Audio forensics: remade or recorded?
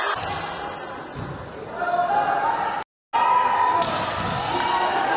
recorded